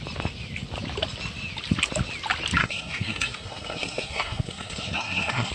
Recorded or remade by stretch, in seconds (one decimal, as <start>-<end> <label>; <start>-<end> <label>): 0.0-2.6 recorded; 2.6-5.5 remade